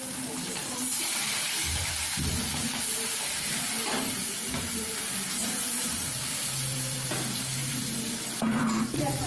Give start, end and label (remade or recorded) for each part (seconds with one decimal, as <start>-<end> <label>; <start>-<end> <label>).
0.0-9.3 remade